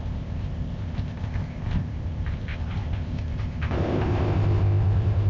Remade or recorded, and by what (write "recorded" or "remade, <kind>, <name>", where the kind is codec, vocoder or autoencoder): remade, codec, ZipCodec